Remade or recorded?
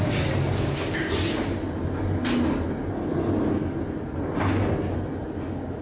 recorded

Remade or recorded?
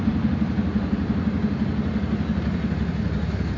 recorded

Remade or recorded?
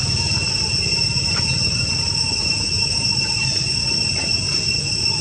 recorded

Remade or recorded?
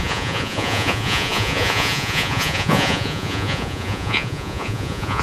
remade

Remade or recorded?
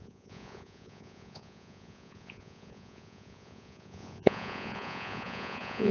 remade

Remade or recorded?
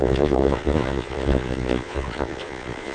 remade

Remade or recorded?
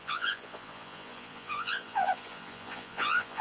remade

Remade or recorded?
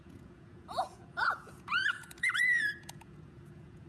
remade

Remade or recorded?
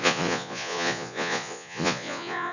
remade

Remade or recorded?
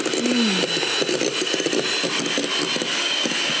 recorded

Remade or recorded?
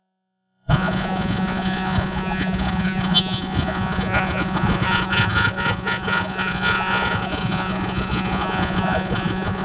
remade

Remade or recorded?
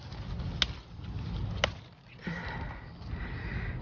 recorded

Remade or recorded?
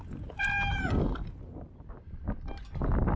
recorded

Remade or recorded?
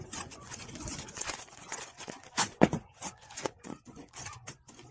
remade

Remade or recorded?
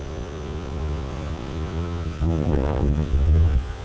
remade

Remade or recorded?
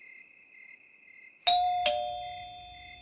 recorded